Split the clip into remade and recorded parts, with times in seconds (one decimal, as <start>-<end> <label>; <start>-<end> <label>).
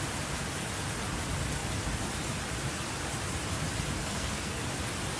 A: 0.0-4.0 recorded; 4.0-4.6 remade; 4.6-5.2 recorded